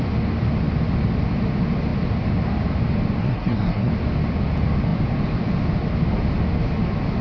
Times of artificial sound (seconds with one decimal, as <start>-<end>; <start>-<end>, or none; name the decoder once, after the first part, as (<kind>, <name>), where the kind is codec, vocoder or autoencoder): 3.2-3.9 (codec, SNAC)